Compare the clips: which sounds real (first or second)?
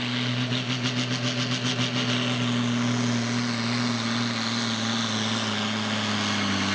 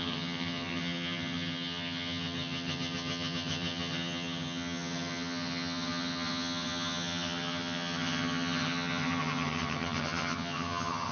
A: first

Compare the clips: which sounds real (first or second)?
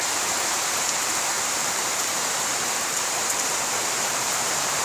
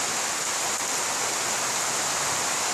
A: second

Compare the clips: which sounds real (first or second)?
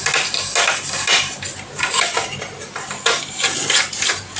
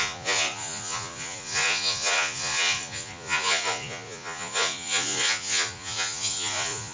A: first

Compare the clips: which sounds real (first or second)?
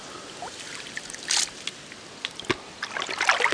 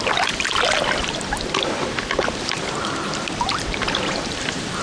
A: first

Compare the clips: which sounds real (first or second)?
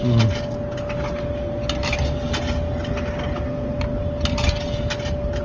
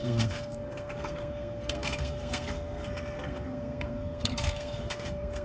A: first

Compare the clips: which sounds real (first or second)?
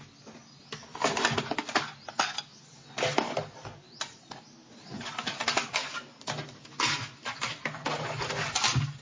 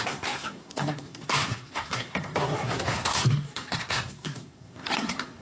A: first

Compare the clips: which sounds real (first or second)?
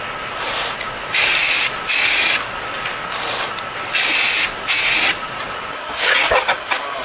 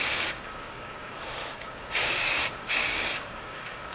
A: first